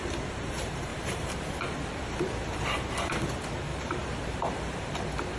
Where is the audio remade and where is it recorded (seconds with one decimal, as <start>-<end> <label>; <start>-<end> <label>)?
0.0-0.9 recorded; 0.9-3.2 remade; 3.2-3.7 recorded; 3.7-5.0 remade; 5.0-5.4 recorded